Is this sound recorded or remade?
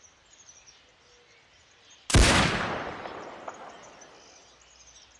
recorded